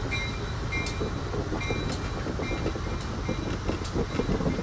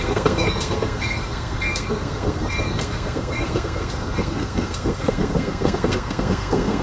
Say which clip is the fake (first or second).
second